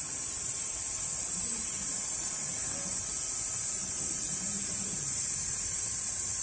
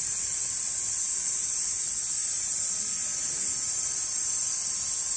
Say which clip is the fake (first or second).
first